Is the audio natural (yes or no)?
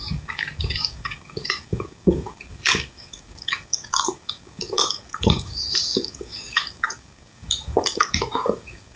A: no